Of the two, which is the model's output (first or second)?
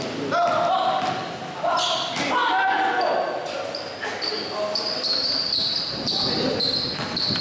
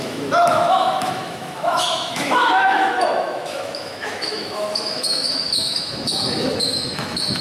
second